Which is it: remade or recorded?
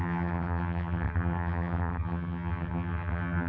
remade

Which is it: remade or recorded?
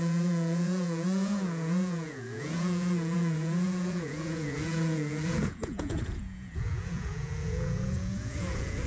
remade